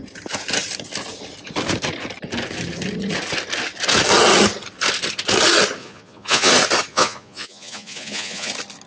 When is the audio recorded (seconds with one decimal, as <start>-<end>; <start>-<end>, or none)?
0.0-5.8; 6.5-6.9; 8.5-8.9